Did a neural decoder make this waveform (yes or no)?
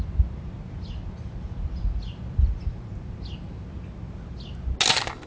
no